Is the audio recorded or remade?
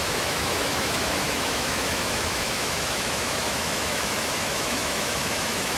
remade